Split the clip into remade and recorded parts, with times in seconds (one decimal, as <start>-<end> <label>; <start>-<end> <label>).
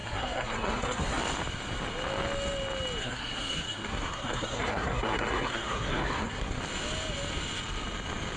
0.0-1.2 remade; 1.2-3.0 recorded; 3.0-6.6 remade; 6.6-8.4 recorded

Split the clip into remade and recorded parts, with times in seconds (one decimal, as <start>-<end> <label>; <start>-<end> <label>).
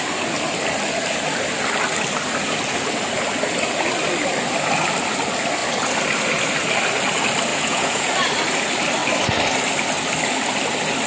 0.0-7.5 recorded; 7.5-8.1 remade; 8.1-11.1 recorded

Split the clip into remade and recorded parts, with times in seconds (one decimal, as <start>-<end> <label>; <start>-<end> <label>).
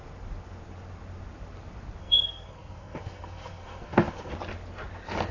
0.0-2.0 recorded; 2.0-4.3 remade; 4.3-5.3 recorded